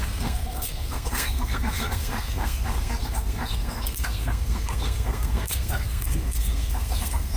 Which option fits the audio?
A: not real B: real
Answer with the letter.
A